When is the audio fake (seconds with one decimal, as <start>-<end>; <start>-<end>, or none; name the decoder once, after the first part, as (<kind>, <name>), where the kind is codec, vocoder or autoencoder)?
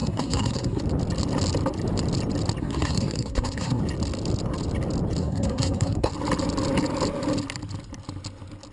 0.0-0.8 (codec, SNAC); 2.6-3.8; 5.2-6.1